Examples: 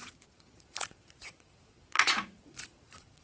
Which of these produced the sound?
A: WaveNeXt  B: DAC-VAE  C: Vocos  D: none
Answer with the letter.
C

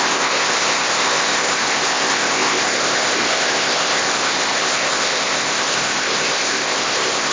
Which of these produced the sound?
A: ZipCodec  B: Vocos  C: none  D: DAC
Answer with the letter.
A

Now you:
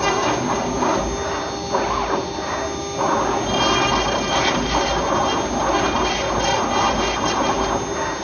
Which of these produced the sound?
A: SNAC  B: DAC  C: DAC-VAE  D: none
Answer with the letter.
D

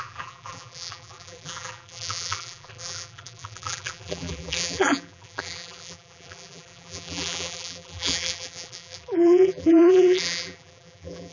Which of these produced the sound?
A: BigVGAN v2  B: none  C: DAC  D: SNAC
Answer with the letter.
A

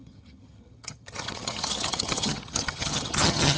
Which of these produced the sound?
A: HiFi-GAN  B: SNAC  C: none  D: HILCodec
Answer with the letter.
A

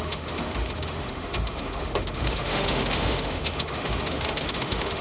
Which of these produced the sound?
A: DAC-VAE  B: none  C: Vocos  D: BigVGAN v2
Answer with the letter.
A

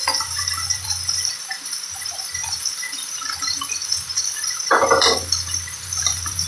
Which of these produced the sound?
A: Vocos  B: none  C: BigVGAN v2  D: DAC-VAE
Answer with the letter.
C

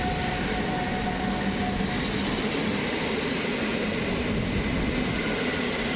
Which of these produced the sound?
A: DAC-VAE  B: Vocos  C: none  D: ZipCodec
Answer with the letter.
C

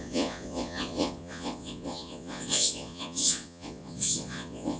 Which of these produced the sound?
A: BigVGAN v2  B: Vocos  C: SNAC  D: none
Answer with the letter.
B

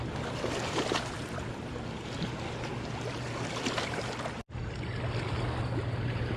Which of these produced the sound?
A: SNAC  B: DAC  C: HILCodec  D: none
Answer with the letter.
D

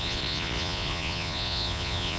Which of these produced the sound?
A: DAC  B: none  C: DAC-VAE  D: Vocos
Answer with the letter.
D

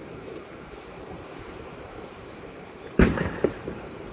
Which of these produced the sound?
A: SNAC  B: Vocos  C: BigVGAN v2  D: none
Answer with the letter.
C